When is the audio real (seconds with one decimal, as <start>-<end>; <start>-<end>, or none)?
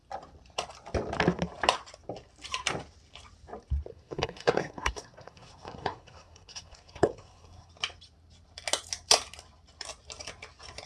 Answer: 0.0-3.9; 7.7-10.9